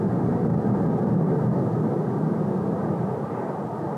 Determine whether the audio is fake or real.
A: real